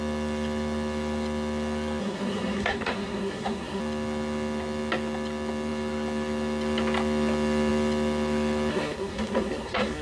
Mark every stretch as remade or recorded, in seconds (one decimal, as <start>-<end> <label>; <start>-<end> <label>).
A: 0.0-2.0 recorded; 2.0-3.8 remade; 3.8-8.7 recorded; 8.7-10.0 remade